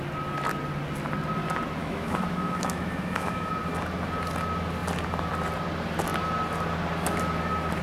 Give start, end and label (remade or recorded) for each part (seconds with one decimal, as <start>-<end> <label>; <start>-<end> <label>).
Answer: 0.0-1.8 recorded; 1.8-3.5 remade; 3.5-7.8 recorded